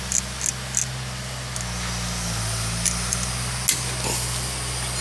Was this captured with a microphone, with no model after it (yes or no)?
yes